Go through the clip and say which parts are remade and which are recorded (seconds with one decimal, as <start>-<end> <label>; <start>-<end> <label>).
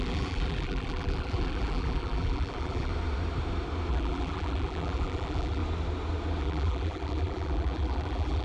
0.0-2.9 remade; 2.9-3.9 recorded; 3.9-5.6 remade; 5.6-6.4 recorded; 6.4-8.4 remade